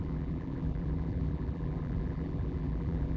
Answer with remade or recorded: remade